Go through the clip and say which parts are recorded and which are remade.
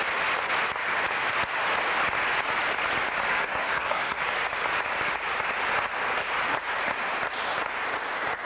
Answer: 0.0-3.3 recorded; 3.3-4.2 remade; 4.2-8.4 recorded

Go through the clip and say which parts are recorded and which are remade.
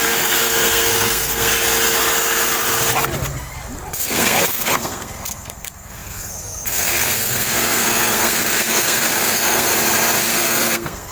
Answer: 0.0-1.5 remade; 1.5-3.9 recorded; 3.9-9.7 remade; 9.7-10.3 recorded; 10.3-11.1 remade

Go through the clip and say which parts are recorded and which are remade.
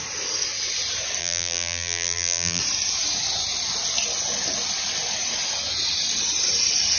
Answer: 0.0-1.2 recorded; 1.2-2.6 remade; 2.6-7.0 recorded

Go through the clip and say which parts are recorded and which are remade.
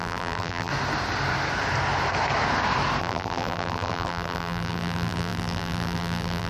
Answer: 0.0-0.7 remade; 0.7-3.0 recorded; 3.0-6.5 remade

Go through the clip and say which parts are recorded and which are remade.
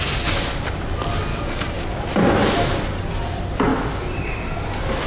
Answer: 0.0-1.3 recorded; 1.3-2.0 remade; 2.0-5.1 recorded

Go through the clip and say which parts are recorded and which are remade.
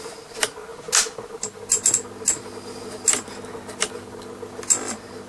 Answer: 0.0-5.3 recorded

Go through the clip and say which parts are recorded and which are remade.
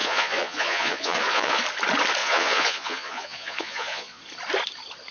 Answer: 0.0-1.6 remade; 1.6-2.2 recorded; 2.2-4.2 remade; 4.2-5.1 recorded